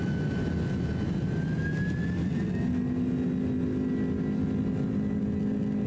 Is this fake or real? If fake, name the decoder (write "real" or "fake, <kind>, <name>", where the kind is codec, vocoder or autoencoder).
real